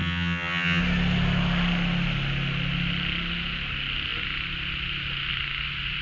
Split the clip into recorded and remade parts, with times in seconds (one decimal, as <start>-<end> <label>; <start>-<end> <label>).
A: 0.0-0.8 remade; 0.8-6.0 recorded